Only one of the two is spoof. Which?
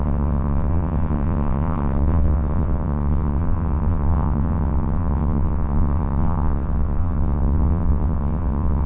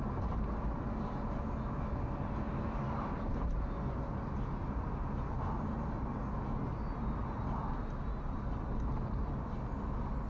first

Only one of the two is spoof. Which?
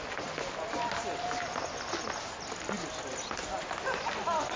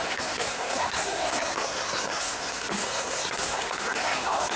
second